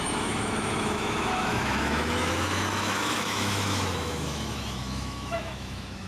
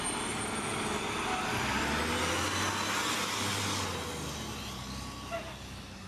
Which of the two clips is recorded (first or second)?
second